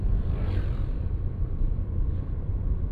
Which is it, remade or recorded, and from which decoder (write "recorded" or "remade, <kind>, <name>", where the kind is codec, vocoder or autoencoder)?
recorded